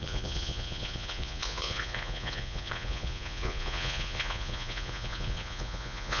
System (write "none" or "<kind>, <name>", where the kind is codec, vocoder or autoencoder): vocoder, Vocos